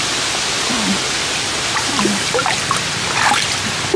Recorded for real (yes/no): yes